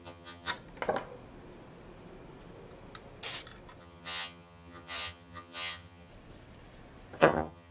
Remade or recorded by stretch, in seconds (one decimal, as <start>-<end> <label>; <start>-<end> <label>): 0.0-0.5 remade; 0.5-3.8 recorded; 3.8-6.1 remade; 6.1-7.2 recorded; 7.2-7.7 remade